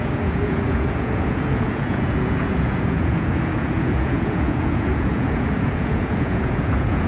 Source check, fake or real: fake